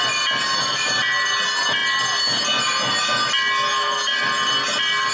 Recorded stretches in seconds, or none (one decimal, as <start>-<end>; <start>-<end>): 0.0-5.1